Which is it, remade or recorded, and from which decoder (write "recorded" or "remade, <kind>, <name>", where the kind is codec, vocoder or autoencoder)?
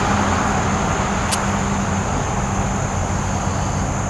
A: recorded